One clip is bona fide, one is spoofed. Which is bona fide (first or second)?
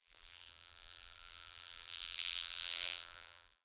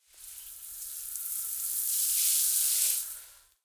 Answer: second